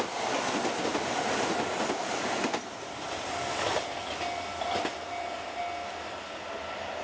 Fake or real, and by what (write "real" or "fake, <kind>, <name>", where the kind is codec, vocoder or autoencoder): real